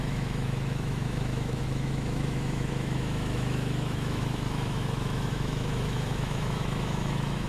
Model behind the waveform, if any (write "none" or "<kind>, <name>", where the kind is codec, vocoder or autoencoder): autoencoder, DAC-VAE